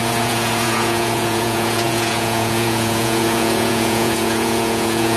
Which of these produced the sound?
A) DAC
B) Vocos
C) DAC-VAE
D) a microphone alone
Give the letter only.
B